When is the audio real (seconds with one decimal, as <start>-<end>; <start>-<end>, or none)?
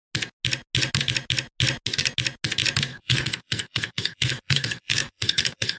0.0-2.9